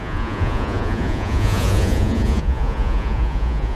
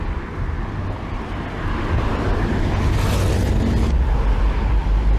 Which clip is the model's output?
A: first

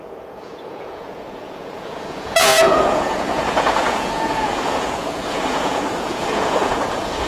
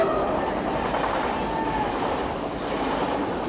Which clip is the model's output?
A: first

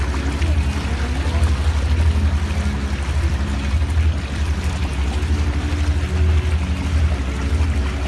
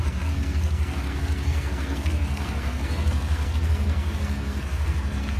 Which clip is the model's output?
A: second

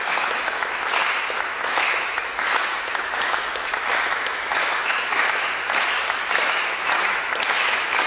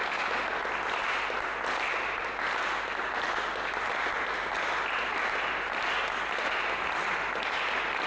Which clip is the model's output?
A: first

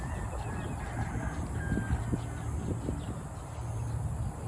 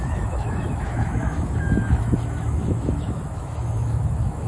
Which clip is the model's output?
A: second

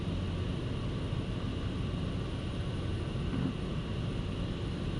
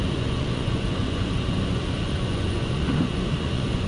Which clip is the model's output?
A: second